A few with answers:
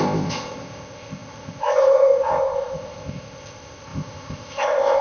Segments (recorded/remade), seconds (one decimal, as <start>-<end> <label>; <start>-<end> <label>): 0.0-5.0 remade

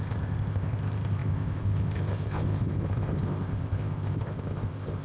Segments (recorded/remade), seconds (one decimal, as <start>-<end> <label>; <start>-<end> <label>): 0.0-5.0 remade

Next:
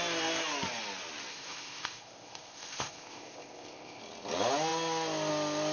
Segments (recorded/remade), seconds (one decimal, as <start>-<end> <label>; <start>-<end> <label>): 0.0-1.3 recorded; 1.3-4.0 remade; 4.0-5.7 recorded

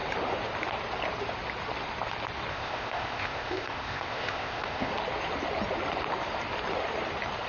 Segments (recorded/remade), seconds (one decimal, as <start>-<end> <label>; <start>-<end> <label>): 0.0-2.5 recorded; 2.5-4.9 remade; 4.9-7.5 recorded

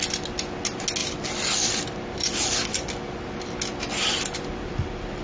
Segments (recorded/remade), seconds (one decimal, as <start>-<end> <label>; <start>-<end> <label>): 0.0-5.2 recorded

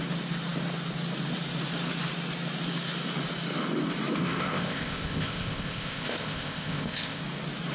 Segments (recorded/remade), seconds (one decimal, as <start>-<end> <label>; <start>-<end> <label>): 0.0-4.2 recorded; 4.2-7.2 remade; 7.2-7.7 recorded

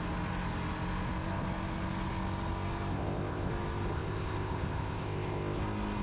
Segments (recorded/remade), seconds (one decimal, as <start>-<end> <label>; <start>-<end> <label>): 0.0-2.9 recorded; 2.9-3.5 remade; 3.5-3.9 recorded; 3.9-5.6 remade; 5.6-6.0 recorded

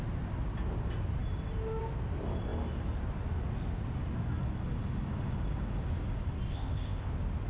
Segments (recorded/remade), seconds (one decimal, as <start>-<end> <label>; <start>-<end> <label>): 0.0-6.5 recorded; 6.5-7.1 remade; 7.1-7.5 recorded